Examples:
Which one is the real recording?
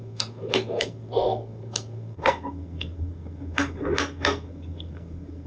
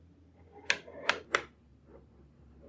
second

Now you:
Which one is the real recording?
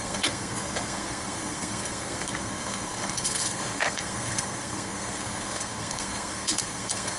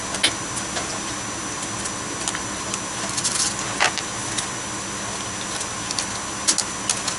second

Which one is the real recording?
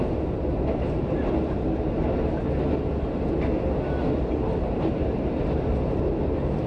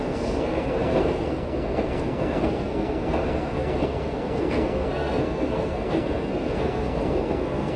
first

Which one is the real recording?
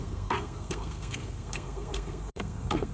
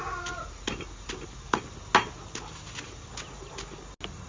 second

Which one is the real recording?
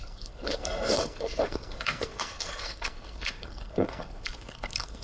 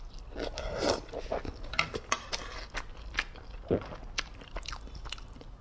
second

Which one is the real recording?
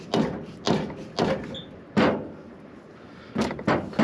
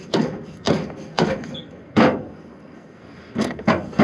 first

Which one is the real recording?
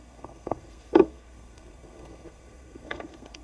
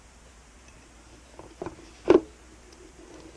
second